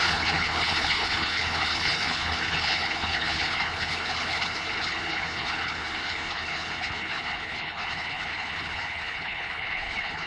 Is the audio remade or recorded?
remade